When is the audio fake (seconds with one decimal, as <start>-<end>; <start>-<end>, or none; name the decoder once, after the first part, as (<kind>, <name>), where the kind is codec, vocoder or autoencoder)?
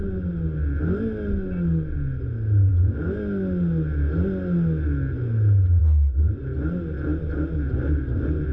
none